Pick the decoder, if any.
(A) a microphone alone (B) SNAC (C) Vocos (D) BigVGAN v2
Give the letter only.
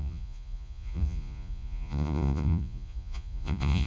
C